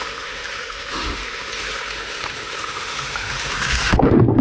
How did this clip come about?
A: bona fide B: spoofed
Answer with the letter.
B